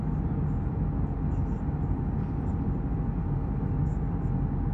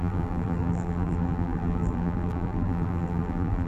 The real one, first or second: first